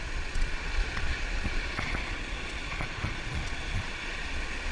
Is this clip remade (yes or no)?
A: yes